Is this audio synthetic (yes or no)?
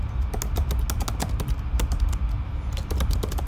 no